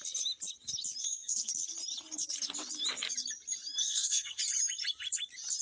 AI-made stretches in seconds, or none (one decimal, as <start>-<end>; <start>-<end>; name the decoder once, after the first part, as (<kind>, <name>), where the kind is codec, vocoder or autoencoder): 1.0-1.5 (codec, SNAC); 3.8-4.4